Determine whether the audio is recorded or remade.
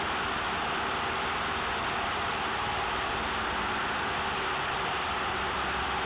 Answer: recorded